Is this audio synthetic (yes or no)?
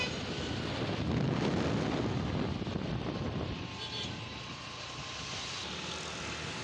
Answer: no